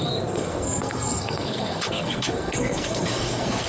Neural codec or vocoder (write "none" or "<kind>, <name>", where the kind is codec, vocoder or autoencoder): codec, SNAC